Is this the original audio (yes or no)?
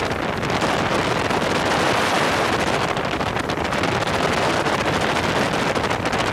yes